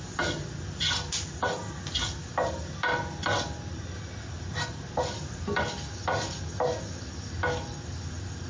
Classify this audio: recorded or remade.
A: recorded